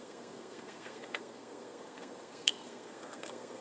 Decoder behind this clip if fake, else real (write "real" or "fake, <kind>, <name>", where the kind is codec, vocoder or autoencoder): fake, codec, SNAC